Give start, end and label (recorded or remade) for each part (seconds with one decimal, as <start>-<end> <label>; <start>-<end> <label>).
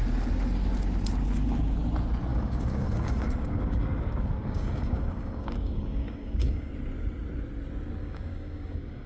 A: 0.0-2.3 recorded; 2.3-6.7 remade; 6.7-8.0 recorded; 8.0-9.1 remade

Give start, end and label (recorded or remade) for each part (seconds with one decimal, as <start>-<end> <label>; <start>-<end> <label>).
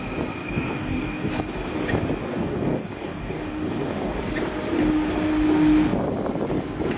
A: 0.0-0.4 recorded; 0.4-1.3 remade; 1.3-2.2 recorded; 2.2-4.2 remade; 4.2-7.0 recorded